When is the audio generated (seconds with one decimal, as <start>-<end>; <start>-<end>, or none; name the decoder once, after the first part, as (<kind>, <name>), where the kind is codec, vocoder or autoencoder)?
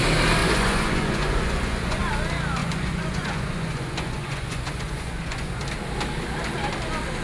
0.4-2.0 (vocoder, Vocos); 2.6-5.6